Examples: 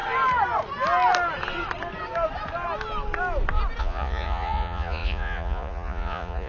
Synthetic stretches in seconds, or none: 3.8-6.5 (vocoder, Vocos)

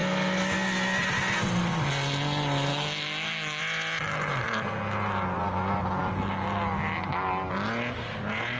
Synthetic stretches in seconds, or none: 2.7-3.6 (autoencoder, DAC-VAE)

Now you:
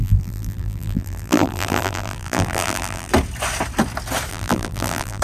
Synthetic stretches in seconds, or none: 0.0-3.1 (vocoder, BigVGAN v2); 4.3-5.2